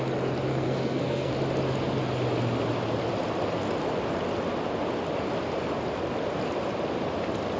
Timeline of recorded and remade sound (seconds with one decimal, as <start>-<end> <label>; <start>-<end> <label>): 0.0-0.5 recorded; 0.5-1.3 remade; 1.3-7.6 recorded